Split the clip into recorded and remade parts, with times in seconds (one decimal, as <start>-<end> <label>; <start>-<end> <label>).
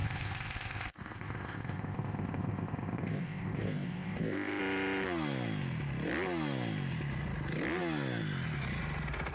0.0-4.6 remade; 4.6-9.3 recorded